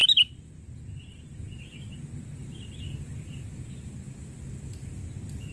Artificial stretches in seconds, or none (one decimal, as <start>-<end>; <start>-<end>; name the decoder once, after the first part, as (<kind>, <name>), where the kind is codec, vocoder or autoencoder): 0.0-0.7 (vocoder, BigVGAN v2)